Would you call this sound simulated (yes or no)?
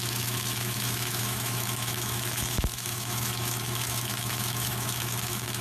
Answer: yes